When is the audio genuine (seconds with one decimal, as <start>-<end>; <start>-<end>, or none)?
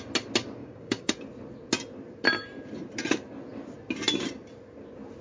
0.0-0.6; 1.1-5.2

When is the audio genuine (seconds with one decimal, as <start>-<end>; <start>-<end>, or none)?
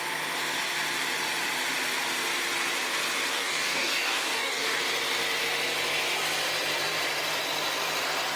0.0-3.3; 4.8-8.4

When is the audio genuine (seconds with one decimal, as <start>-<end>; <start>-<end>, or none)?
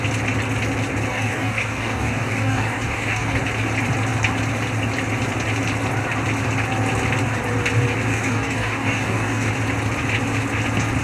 0.0-1.1; 3.4-8.1; 9.5-11.0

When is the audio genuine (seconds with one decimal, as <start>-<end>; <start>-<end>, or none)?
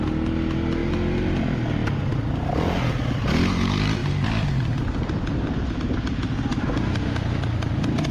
0.0-8.1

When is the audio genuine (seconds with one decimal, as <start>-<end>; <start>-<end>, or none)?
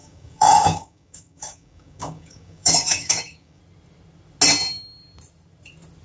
3.6-6.0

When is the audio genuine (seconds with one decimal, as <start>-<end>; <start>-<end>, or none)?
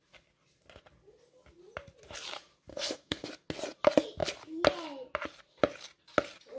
0.0-2.7; 3.3-6.6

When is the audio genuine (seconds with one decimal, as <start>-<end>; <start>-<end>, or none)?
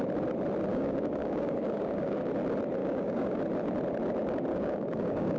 0.0-0.7; 2.3-2.8; 3.4-4.5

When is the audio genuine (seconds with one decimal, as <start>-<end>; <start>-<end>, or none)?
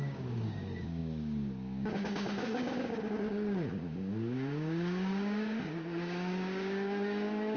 none